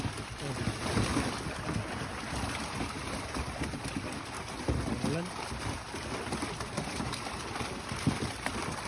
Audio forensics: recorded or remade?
remade